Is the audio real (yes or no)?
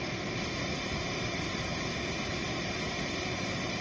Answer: yes